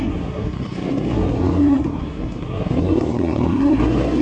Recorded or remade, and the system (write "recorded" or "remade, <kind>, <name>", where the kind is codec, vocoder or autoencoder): remade, codec, SNAC